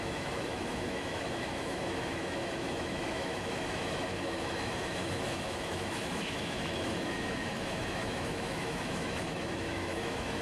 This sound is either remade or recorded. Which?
remade